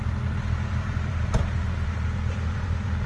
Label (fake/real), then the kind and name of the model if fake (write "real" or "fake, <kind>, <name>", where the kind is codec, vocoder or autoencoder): fake, vocoder, BigVGAN v2